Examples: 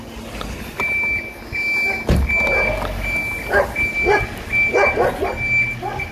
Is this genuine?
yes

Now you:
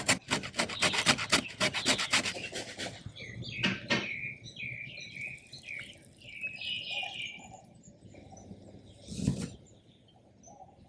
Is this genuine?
yes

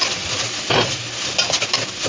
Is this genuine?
yes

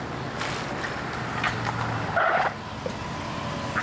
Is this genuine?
yes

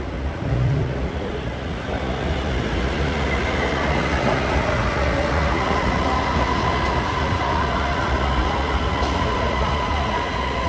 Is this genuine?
no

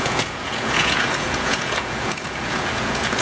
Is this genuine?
no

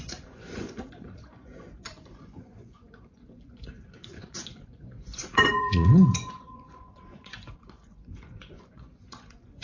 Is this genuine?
no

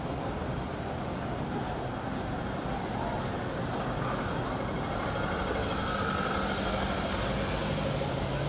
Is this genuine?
yes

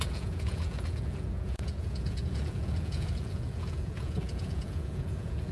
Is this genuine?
no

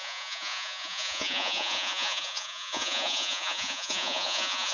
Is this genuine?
no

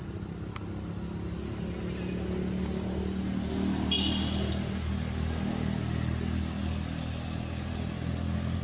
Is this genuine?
yes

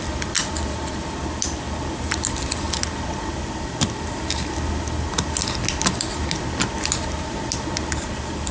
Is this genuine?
yes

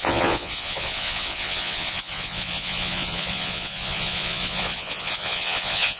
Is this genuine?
no